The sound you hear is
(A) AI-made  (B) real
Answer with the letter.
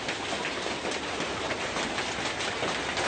B